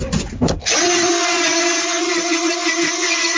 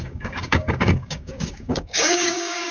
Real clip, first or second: first